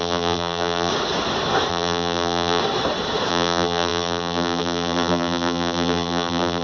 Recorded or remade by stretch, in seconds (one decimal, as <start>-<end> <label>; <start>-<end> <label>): 0.0-0.9 remade; 0.9-1.7 recorded; 1.7-2.6 remade; 2.6-3.3 recorded; 3.3-6.6 remade